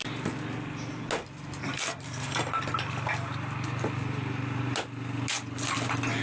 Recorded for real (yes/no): yes